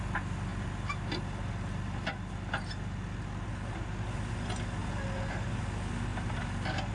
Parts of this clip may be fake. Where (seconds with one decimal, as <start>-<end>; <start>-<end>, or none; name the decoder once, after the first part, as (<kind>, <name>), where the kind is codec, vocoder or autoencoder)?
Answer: none